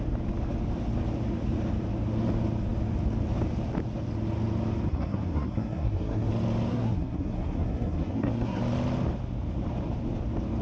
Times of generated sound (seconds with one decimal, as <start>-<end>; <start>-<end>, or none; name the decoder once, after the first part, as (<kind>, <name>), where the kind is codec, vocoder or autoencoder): 4.9-6.3 (codec, SNAC); 6.7-8.6